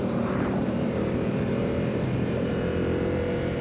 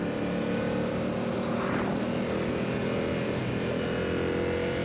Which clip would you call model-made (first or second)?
first